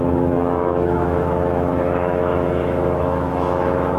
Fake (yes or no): yes